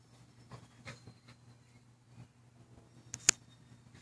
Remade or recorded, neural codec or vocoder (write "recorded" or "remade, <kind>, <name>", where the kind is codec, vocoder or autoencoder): recorded